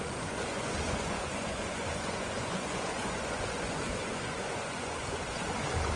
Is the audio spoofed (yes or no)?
yes